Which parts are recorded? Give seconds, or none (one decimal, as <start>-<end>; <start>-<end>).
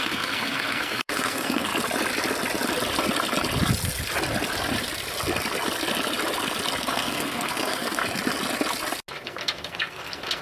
1.7-6.8; 8.0-9.1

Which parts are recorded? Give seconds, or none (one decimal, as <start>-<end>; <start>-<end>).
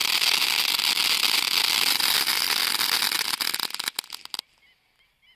0.0-5.4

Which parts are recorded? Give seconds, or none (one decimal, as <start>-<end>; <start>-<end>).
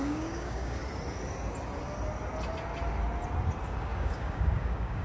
0.8-3.8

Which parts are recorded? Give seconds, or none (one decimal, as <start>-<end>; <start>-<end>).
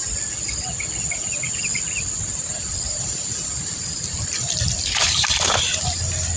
0.0-6.4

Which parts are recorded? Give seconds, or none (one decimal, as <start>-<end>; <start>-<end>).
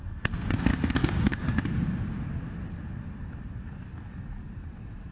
1.6-5.1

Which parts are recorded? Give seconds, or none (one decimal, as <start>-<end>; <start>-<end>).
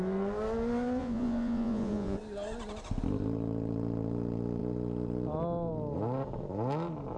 0.0-1.0; 2.2-7.2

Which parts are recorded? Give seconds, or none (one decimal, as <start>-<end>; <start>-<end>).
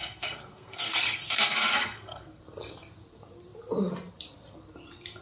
2.4-5.2